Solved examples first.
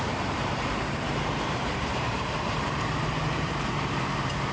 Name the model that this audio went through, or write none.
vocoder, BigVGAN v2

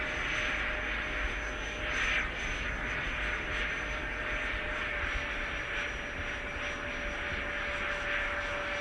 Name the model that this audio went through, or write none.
none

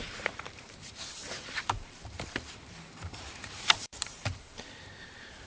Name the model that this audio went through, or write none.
vocoder, BigVGAN v2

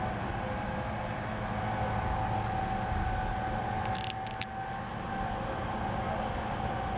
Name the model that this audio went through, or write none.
none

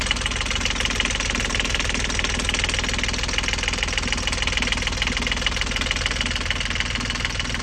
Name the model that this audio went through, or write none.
none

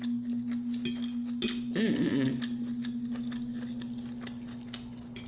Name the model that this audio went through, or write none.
none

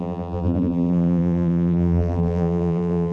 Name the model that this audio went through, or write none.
vocoder, BigVGAN v2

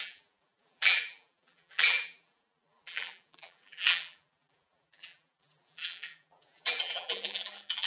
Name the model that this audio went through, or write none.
vocoder, BigVGAN v2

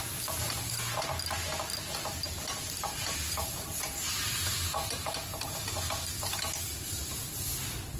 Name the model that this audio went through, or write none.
none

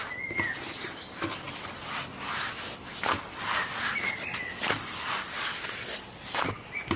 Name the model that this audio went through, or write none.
none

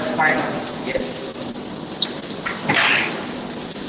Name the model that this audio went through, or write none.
none